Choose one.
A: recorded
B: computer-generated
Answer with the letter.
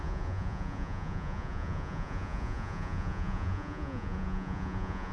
B